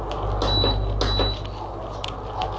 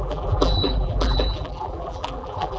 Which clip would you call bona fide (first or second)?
first